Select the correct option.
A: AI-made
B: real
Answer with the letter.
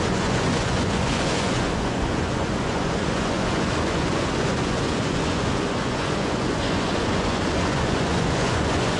A